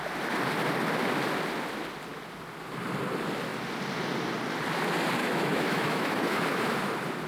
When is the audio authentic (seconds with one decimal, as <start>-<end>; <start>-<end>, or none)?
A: 0.0-5.2; 6.4-7.3